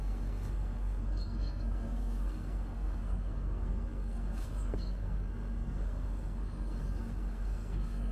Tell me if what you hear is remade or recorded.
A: remade